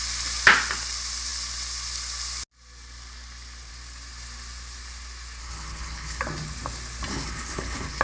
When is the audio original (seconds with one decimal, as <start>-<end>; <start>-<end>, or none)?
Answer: 0.0-5.4; 6.2-7.1